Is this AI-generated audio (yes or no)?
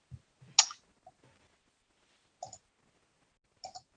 no